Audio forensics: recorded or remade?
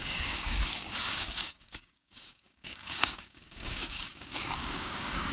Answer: remade